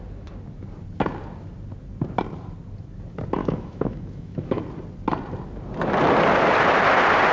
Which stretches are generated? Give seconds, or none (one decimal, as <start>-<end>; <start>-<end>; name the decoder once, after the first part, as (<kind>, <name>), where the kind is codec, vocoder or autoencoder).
3.4-4.6 (autoencoder, DAC-VAE)

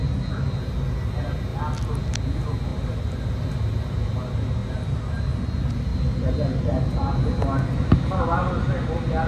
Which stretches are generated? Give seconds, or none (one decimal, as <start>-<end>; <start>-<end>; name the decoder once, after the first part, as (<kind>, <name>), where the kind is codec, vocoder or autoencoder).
none

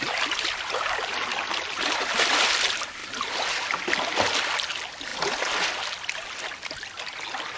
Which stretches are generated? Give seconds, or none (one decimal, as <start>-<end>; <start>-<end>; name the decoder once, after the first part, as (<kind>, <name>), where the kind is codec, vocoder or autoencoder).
none

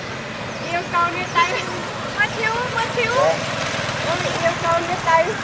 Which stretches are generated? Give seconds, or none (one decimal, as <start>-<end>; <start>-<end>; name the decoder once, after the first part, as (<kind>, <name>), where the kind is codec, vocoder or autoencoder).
none